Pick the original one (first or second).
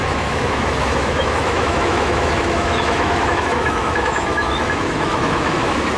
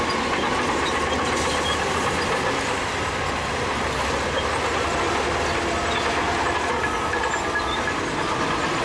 second